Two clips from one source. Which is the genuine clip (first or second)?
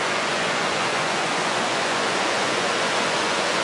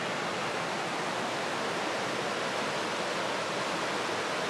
second